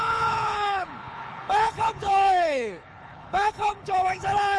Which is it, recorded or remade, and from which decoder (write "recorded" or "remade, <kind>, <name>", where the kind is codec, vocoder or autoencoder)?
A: remade, codec, HILCodec